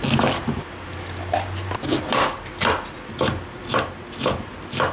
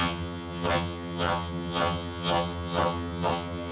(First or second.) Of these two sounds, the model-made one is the second